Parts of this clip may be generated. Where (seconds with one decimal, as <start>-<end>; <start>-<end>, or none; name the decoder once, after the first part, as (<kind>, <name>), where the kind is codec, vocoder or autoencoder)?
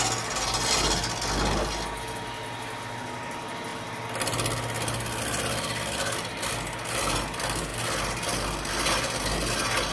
none